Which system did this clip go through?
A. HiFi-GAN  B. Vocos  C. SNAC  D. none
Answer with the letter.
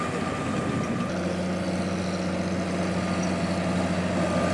D